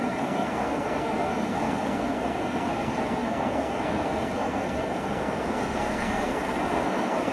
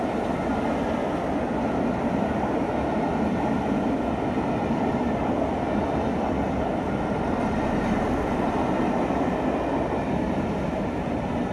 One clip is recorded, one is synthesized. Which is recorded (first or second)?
second